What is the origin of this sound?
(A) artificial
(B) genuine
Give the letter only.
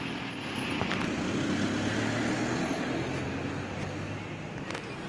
B